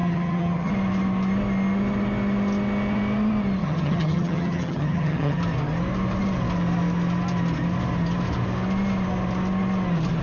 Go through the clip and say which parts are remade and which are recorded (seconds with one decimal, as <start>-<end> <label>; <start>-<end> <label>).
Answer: 0.0-0.7 remade; 0.7-3.6 recorded; 3.6-5.4 remade; 5.4-10.2 recorded